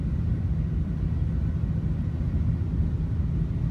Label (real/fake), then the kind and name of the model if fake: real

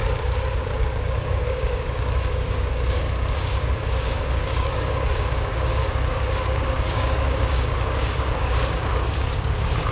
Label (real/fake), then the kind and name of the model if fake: fake, codec, DAC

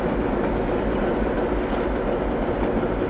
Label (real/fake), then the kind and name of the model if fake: real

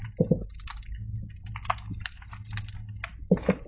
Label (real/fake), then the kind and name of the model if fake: real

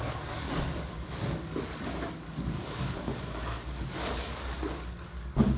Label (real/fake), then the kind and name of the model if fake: fake, codec, DAC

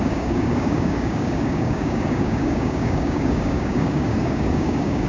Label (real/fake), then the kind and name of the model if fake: fake, codec, DAC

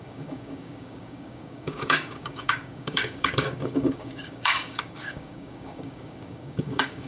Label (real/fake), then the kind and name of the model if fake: fake, codec, DAC